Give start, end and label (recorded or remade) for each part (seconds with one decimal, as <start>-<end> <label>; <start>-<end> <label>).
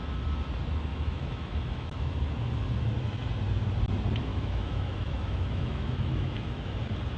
0.0-0.9 recorded; 0.9-2.1 remade; 2.1-4.3 recorded; 4.3-6.8 remade; 6.8-7.2 recorded